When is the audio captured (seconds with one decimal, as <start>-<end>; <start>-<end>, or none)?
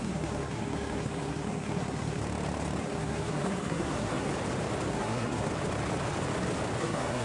2.2-2.8; 4.3-4.9; 5.5-6.8